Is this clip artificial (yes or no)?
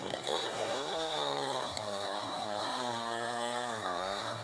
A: yes